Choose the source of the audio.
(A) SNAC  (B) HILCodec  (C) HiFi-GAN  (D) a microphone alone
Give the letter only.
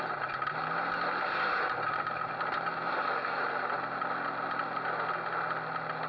D